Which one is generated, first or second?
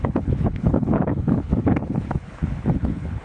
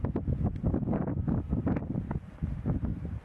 first